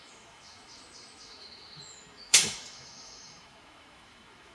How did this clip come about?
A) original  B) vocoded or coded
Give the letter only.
B